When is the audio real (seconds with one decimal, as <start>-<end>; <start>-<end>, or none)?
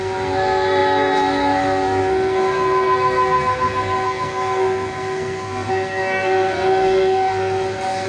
none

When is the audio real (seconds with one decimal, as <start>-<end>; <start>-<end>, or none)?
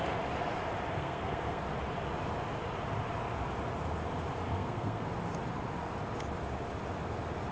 0.0-1.0; 1.6-4.5; 5.0-7.5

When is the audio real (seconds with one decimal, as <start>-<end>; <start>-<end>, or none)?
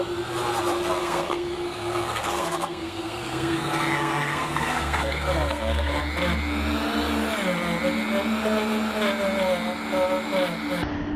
0.0-1.0; 6.0-11.2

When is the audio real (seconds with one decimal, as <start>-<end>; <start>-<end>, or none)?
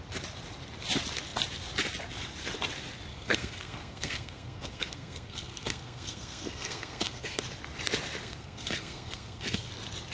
0.0-3.1; 7.4-8.2; 9.7-10.1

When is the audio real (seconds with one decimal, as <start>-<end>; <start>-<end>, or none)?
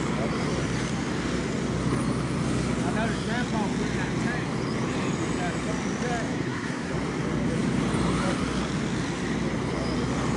0.0-6.3; 6.9-10.4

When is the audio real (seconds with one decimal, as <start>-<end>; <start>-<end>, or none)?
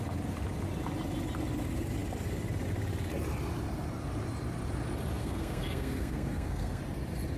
0.0-5.2; 6.8-7.4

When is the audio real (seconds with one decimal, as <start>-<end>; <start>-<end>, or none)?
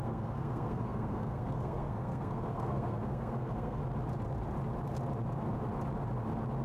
3.8-6.6